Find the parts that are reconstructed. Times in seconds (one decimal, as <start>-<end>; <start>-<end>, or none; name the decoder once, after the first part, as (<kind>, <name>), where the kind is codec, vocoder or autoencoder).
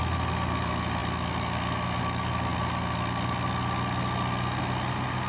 none